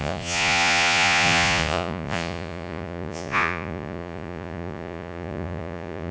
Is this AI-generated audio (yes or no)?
yes